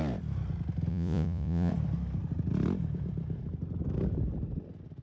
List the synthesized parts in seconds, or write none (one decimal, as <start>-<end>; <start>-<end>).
0.9-1.7